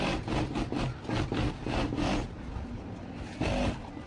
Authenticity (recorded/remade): recorded